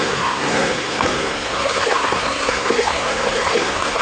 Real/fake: fake